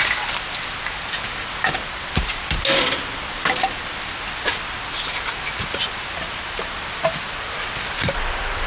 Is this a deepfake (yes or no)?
no